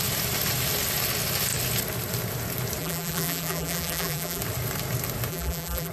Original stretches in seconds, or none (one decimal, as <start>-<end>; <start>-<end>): 0.0-2.8; 4.4-5.3